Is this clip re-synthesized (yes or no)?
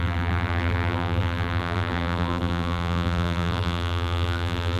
yes